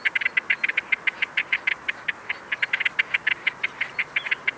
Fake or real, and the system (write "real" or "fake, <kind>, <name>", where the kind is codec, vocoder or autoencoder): real